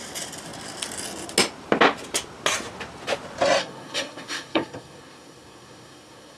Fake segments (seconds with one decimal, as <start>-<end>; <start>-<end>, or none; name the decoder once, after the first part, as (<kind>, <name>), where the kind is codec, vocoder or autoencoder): 3.6-6.4 (codec, SNAC)